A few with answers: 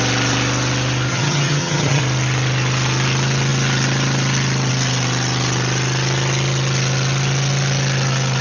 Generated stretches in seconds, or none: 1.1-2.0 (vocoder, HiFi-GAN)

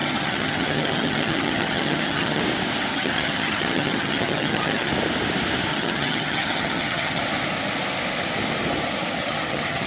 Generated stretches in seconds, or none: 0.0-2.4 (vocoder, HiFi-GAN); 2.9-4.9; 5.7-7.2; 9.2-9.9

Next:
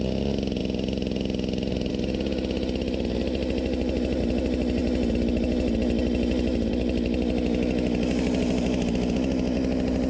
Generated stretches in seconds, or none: none

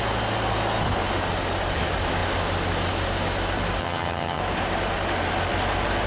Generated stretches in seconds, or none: 3.8-4.4 (vocoder, HiFi-GAN)